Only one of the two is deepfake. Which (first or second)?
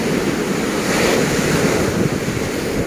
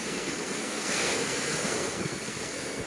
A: second